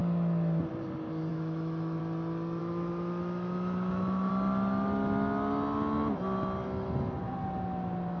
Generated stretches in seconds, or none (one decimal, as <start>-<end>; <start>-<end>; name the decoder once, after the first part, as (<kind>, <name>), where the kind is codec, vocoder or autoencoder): 1.3-2.0 (autoencoder, DAC-VAE); 2.6-4.3